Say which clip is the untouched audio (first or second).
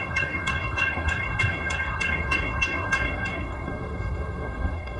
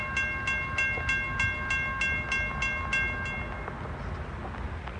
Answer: second